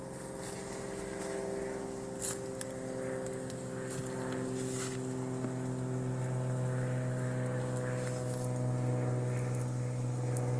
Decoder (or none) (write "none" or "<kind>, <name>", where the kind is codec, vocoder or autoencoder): none